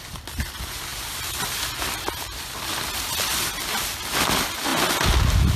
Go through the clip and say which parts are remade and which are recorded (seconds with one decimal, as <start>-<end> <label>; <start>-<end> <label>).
0.0-5.6 recorded